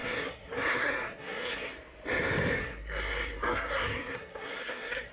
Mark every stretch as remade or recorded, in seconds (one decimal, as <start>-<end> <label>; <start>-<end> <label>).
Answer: 0.0-1.7 remade; 1.7-2.6 recorded; 2.6-5.1 remade